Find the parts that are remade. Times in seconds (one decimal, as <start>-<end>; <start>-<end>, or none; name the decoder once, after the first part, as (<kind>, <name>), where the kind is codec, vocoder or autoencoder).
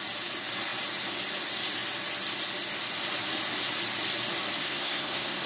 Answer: 4.6-5.5 (codec, SNAC)